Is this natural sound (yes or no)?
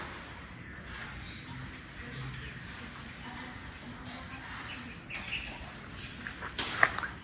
yes